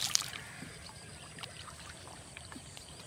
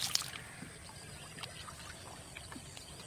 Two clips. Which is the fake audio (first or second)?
first